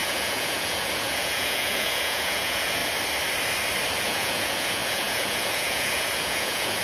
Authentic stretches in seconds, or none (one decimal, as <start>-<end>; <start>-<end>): 2.8-4.0